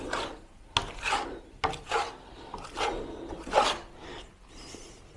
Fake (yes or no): no